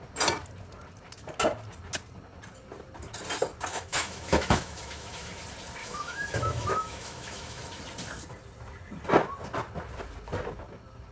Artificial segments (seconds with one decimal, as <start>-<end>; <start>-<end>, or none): 3.7-5.3; 5.8-7.6